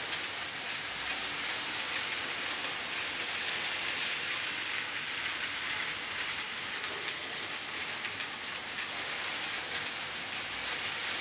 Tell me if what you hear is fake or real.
real